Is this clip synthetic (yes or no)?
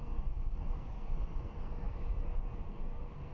yes